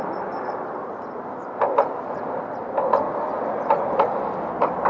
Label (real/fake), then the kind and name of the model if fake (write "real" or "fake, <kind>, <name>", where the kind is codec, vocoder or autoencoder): real